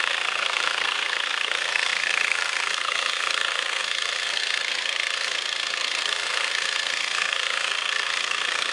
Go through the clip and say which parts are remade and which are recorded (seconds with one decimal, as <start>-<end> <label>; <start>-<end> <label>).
0.0-8.7 remade